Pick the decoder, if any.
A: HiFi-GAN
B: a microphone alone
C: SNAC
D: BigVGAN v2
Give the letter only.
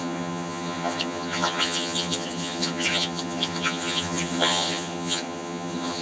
A